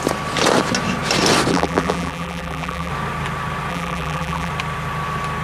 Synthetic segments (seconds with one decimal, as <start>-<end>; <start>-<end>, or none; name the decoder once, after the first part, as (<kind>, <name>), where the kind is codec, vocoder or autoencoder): 1.5-2.9 (vocoder, BigVGAN v2); 3.7-4.5